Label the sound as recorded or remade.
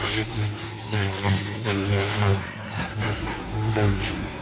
remade